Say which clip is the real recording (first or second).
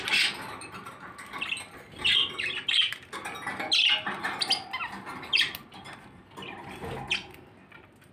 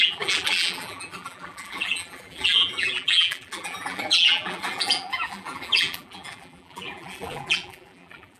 first